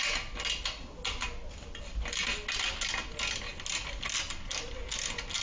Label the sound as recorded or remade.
recorded